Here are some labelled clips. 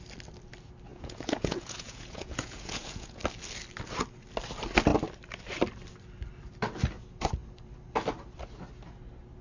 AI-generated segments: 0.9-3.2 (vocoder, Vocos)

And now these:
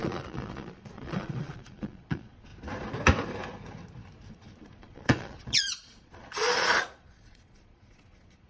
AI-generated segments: 0.0-2.5 (vocoder, Vocos); 4.3-8.5